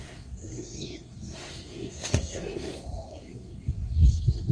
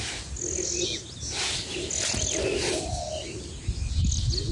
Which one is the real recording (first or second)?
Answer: second